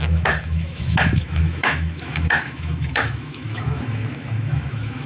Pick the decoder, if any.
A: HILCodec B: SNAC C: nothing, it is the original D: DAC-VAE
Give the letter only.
D